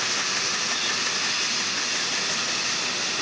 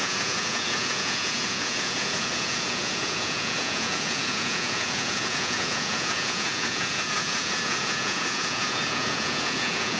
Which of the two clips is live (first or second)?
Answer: first